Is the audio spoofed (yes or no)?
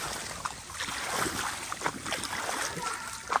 no